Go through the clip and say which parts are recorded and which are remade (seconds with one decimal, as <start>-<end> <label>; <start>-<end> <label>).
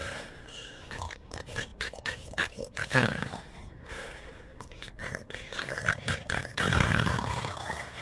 0.0-8.0 remade